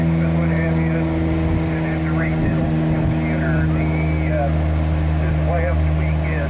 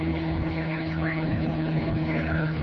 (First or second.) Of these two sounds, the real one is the first